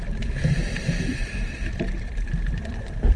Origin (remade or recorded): remade